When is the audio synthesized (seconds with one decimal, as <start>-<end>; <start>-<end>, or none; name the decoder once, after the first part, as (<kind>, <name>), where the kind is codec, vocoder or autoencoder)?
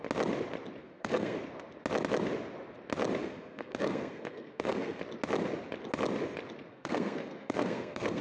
0.8-1.4 (codec, SNAC); 3.2-5.0; 6.7-8.2